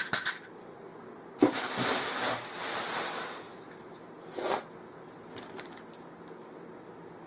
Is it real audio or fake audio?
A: real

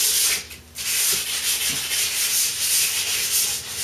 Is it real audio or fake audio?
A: real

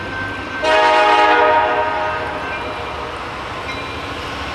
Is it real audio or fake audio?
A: real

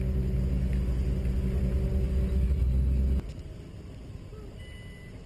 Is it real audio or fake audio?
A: real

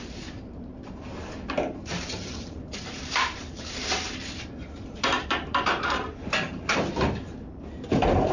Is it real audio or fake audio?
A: fake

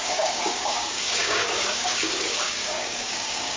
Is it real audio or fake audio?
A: fake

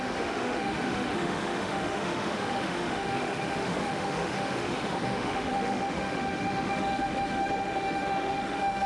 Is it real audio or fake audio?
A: fake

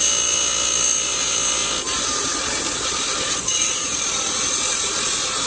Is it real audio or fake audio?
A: real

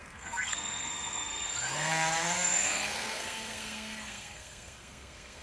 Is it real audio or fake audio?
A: fake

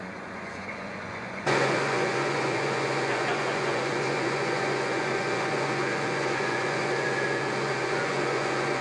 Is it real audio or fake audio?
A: fake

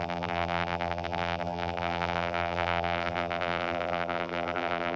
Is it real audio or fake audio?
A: fake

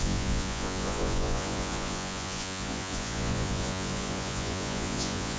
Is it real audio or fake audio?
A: fake